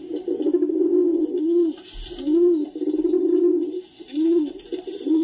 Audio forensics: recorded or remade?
recorded